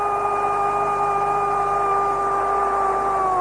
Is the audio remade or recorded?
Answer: recorded